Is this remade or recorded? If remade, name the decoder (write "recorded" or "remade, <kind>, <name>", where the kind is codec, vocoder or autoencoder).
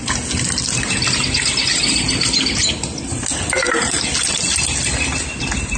recorded